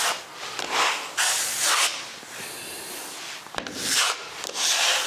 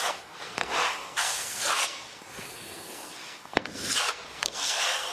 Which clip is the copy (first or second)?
second